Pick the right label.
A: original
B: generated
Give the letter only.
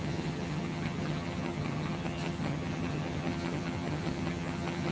B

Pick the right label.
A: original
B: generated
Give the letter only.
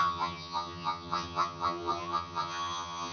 B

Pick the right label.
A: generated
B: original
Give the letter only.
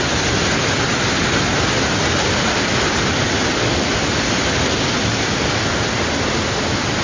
B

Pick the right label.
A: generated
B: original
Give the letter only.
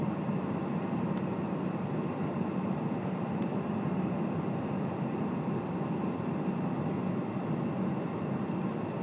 B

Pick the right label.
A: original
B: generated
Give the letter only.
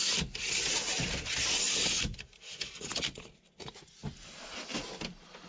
A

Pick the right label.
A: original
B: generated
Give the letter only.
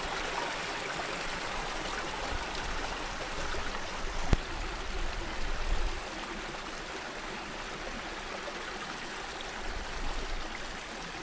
A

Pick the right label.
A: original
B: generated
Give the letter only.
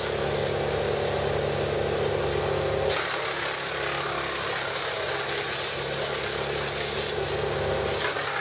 A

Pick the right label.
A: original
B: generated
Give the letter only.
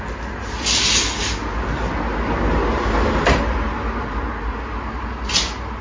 A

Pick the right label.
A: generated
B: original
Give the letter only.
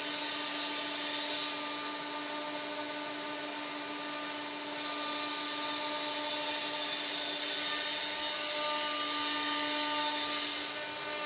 B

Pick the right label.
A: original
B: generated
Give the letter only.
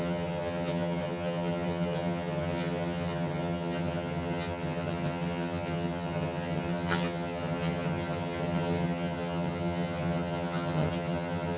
B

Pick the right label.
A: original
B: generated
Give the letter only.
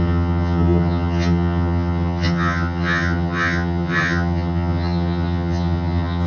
B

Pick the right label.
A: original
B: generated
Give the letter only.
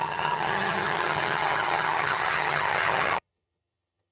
B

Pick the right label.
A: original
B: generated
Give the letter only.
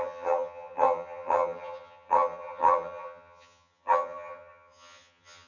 B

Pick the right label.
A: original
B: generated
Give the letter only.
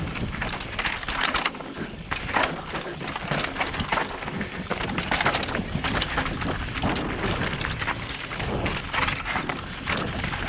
A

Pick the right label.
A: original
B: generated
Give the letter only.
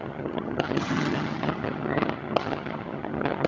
B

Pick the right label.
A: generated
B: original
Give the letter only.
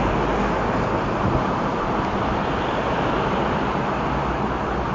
B